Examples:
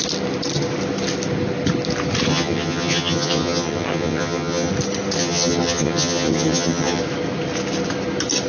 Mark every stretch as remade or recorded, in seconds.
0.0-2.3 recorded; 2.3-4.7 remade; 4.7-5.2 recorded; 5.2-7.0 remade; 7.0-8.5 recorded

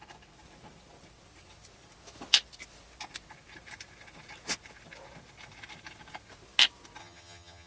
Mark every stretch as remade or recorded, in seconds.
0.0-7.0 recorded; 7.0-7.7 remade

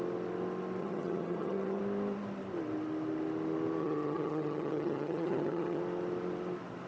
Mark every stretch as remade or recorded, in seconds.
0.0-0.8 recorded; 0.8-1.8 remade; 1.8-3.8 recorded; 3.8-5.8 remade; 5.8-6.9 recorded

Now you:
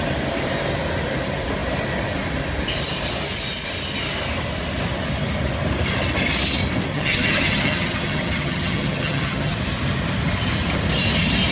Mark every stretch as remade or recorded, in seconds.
0.0-6.9 recorded; 6.9-9.6 remade; 9.6-11.5 recorded

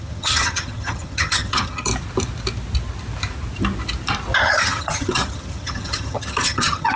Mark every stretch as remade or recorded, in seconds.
0.0-1.9 remade; 1.9-4.4 recorded; 4.4-7.0 remade